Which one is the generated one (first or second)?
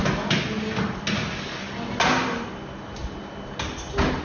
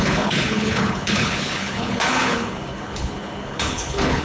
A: second